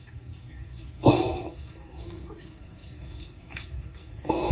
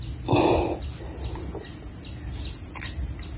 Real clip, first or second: second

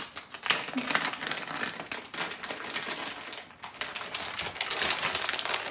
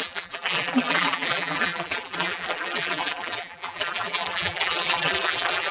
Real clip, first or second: first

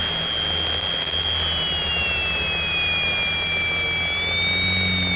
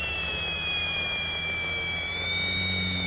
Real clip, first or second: first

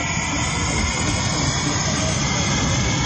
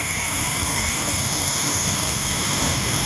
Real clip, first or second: first